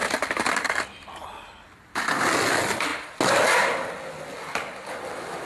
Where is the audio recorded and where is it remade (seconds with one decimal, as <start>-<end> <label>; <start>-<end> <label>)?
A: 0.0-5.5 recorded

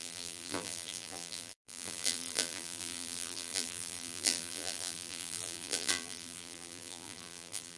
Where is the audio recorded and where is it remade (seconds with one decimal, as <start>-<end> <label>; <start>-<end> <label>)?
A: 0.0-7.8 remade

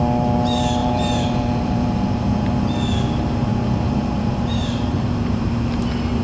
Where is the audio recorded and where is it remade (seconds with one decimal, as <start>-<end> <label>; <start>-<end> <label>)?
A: 0.0-0.8 recorded; 0.8-2.4 remade; 2.4-3.5 recorded; 3.5-5.5 remade; 5.5-6.2 recorded

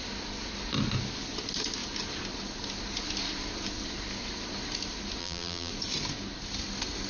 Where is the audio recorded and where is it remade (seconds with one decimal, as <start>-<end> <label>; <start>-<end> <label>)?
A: 0.0-5.2 recorded; 5.2-5.7 remade; 5.7-7.1 recorded

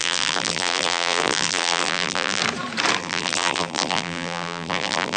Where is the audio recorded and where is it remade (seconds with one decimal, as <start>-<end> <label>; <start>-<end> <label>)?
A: 0.0-2.4 remade; 2.4-3.0 recorded; 3.0-5.2 remade